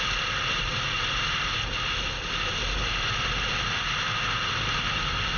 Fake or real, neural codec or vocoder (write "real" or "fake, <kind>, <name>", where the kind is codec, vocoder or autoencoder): real